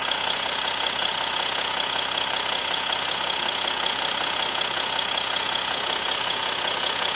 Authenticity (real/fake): fake